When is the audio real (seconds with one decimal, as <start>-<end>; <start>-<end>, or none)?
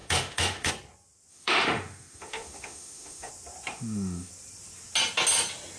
0.7-1.3; 3.3-3.7; 4.3-5.8